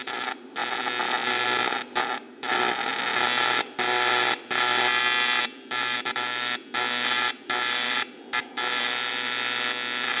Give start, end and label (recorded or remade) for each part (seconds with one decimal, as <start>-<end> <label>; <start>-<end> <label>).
0.0-10.2 recorded